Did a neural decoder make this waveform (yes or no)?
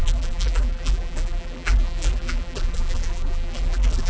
yes